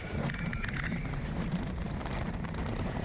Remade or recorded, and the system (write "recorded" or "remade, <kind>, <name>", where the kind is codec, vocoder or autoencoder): remade, vocoder, BigVGAN v2